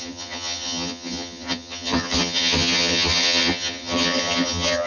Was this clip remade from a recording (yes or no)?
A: yes